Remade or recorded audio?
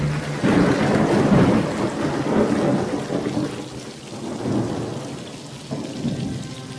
recorded